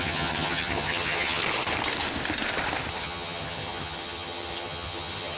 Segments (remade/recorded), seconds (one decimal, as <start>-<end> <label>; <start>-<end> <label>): 0.0-1.4 remade; 1.4-2.9 recorded; 2.9-5.4 remade